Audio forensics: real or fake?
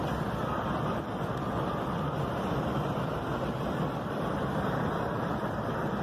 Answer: fake